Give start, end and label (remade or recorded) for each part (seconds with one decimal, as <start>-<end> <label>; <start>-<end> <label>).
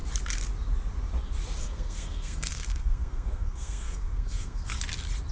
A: 0.0-1.6 recorded; 1.6-4.8 remade; 4.8-5.3 recorded